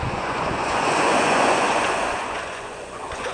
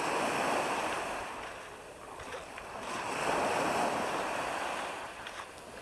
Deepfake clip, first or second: first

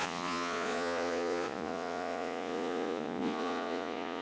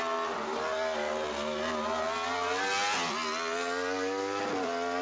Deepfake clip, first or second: first